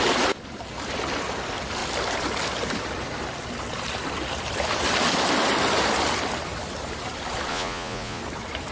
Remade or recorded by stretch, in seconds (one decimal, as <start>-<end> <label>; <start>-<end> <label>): 0.0-7.5 recorded; 7.5-8.2 remade; 8.2-8.7 recorded